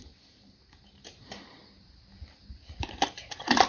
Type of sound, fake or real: fake